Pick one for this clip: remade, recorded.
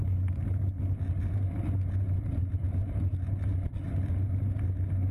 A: recorded